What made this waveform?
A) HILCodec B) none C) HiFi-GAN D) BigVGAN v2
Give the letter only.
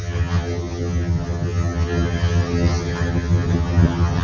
C